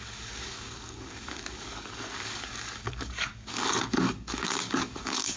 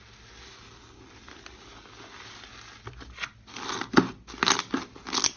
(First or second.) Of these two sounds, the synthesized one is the first